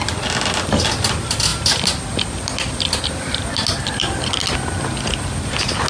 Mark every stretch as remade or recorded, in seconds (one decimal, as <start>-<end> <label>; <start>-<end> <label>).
0.0-5.9 recorded